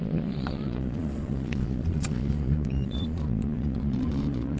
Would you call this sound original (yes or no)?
no